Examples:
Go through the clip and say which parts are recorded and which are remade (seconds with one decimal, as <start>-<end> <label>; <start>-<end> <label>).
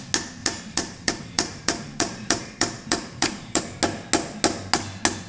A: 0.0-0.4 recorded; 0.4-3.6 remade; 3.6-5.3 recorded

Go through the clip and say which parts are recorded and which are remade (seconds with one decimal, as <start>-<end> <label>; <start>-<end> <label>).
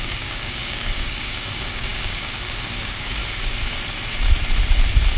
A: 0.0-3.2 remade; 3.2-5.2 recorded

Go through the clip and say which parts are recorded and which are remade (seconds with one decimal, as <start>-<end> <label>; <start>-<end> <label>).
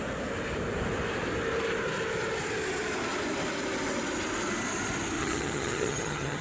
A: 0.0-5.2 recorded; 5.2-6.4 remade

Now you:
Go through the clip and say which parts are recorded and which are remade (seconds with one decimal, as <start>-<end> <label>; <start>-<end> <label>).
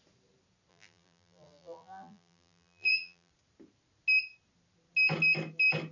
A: 0.0-0.7 recorded; 0.7-3.3 remade; 3.3-5.9 recorded